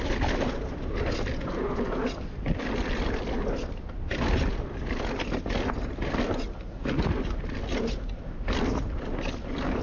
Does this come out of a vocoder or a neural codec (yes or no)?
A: no